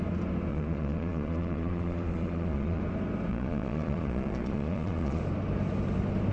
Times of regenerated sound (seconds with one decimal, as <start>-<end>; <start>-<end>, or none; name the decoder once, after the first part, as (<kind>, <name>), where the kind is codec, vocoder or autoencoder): 0.5-2.8 (vocoder, Vocos); 3.3-5.2